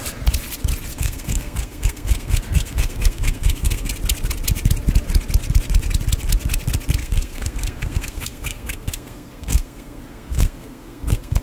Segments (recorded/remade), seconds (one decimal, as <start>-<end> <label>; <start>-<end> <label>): 0.0-0.9 recorded; 0.9-3.9 remade; 3.9-7.0 recorded; 7.0-11.4 remade